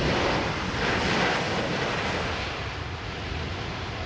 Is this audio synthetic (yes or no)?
no